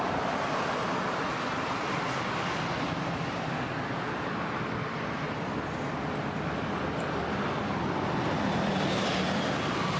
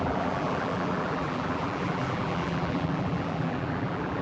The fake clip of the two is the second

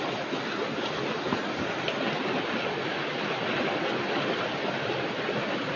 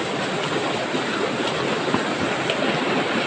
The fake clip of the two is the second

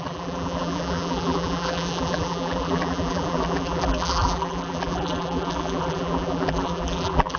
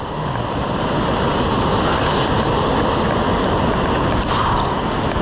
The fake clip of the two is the first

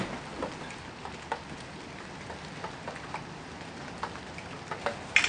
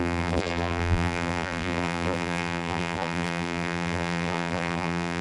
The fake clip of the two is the second